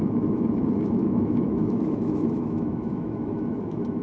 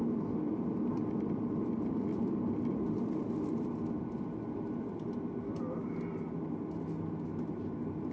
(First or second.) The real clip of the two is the second